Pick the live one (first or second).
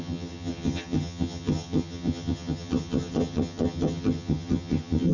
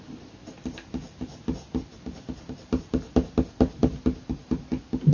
second